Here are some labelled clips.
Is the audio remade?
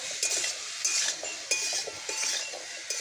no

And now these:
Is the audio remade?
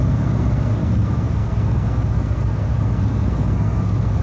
yes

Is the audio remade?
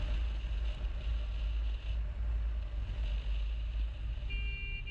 no